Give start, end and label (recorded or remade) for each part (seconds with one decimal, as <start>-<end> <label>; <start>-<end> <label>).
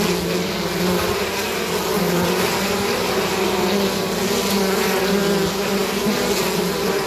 0.0-7.1 recorded